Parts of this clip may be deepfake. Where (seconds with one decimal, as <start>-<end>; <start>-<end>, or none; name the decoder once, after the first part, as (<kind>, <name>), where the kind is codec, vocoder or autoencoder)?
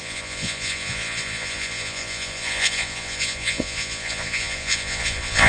0.0-5.5 (vocoder, Vocos)